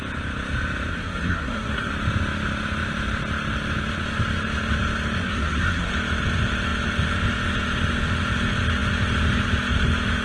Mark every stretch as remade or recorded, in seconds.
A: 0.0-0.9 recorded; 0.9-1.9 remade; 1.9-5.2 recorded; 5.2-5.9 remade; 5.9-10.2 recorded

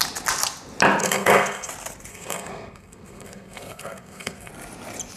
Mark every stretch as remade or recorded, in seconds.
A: 0.0-1.0 recorded; 1.0-1.7 remade; 1.7-2.1 recorded; 2.1-4.5 remade; 4.5-5.2 recorded

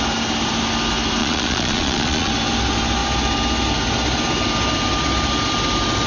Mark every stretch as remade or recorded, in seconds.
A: 0.0-1.2 recorded; 1.2-2.3 remade; 2.3-6.1 recorded

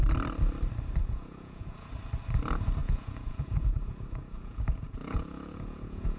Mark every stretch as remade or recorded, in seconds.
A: 0.0-1.0 recorded; 1.0-1.9 remade; 1.9-2.8 recorded; 2.8-6.2 remade